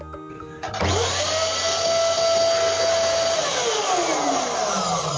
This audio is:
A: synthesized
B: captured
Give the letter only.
B